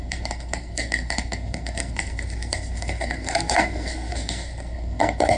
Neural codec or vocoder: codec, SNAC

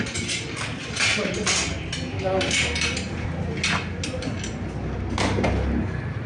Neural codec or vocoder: none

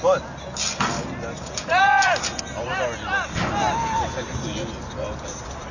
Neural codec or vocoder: none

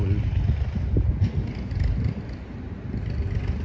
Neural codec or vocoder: none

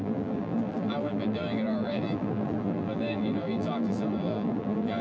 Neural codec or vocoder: vocoder, BigVGAN v2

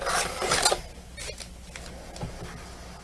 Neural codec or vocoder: none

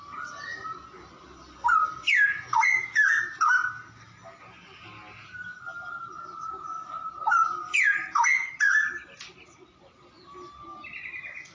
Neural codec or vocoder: none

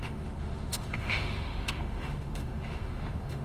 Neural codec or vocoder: autoencoder, DAC-VAE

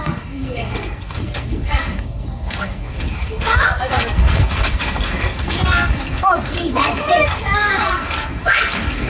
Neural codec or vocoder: codec, SNAC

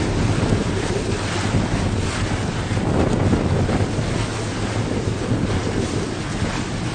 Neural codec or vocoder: none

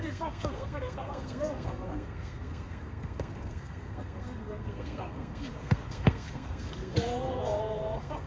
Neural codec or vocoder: codec, SNAC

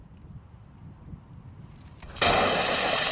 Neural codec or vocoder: none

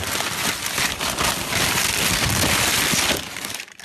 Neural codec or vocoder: none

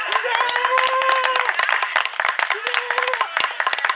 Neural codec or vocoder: none